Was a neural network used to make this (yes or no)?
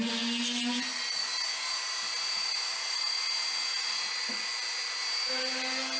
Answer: no